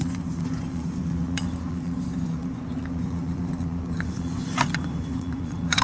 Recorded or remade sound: remade